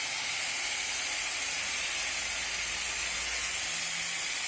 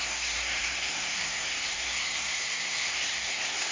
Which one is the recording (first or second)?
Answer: first